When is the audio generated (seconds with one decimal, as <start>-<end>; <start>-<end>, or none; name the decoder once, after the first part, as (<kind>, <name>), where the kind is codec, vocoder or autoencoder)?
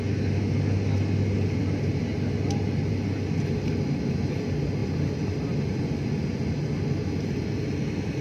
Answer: none